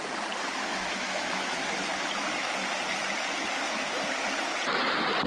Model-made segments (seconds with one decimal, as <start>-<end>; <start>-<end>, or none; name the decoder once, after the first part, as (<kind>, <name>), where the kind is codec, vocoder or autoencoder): 0.7-1.7 (autoencoder, DAC-VAE)